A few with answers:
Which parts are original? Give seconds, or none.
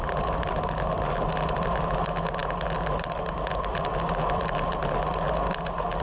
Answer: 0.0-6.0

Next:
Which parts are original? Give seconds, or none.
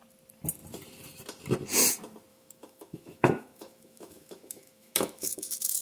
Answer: 0.0-2.3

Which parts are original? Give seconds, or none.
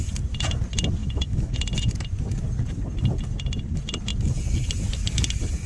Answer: 0.0-1.0; 1.5-5.7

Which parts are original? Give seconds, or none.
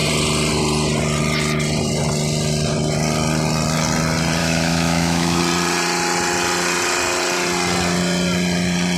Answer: 0.0-4.4; 5.4-9.0